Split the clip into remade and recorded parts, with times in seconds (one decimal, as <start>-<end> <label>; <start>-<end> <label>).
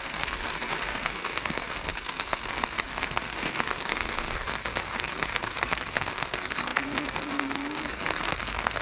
0.0-8.8 remade